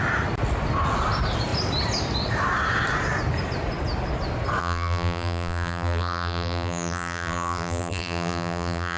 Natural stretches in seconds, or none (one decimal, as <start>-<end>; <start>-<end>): 0.0-4.6